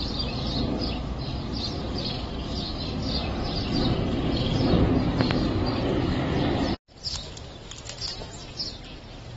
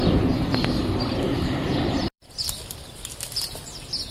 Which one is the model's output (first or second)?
second